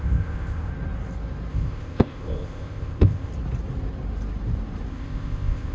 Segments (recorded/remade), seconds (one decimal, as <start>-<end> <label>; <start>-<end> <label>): 0.0-0.7 remade; 0.7-1.5 recorded; 1.5-3.3 remade; 3.3-4.9 recorded; 4.9-5.7 remade